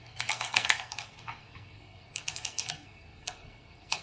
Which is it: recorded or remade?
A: remade